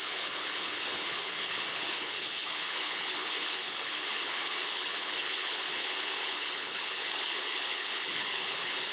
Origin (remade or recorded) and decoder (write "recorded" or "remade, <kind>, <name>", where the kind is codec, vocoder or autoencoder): remade, codec, HILCodec